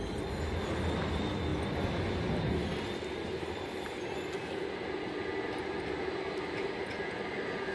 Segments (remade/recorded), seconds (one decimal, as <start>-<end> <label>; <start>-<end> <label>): 0.0-7.7 recorded